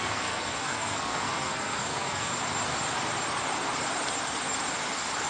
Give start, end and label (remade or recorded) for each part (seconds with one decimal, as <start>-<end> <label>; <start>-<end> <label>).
0.0-2.3 remade; 2.3-5.3 recorded